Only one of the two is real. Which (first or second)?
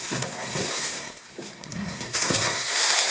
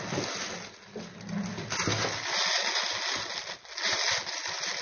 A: second